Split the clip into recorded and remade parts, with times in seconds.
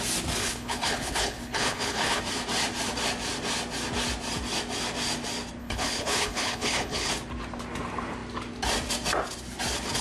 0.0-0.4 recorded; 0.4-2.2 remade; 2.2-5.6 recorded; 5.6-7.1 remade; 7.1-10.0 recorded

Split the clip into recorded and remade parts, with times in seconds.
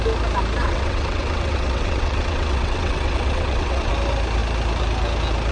0.0-0.6 recorded; 0.6-3.9 remade; 3.9-5.5 recorded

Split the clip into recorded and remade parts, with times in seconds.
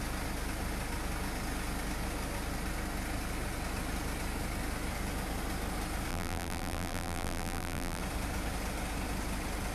0.0-6.1 recorded; 6.1-8.0 remade; 8.0-9.7 recorded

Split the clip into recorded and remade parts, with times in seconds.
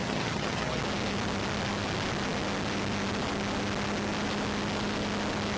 0.0-0.8 remade; 0.8-5.6 recorded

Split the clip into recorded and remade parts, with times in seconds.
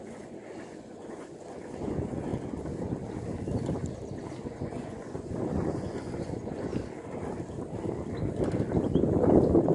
0.0-2.3 remade; 2.3-4.4 recorded; 4.4-6.7 remade; 6.7-9.7 recorded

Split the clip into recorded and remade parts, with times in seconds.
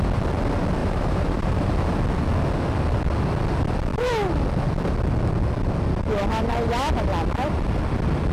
0.0-0.8 recorded; 0.8-1.7 remade; 1.7-8.3 recorded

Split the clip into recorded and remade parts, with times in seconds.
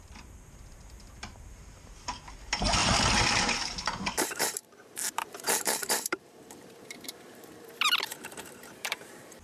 0.0-9.4 remade